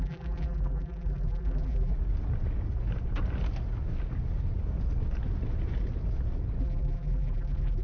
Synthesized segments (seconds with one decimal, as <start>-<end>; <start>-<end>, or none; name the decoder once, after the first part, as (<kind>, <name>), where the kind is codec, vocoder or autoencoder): 0.0-1.9 (vocoder, BigVGAN v2); 6.6-7.8